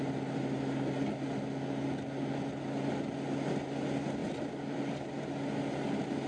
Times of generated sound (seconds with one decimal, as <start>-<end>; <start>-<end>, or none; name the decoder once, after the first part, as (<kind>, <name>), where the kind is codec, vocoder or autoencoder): 4.2-4.8 (vocoder, BigVGAN v2)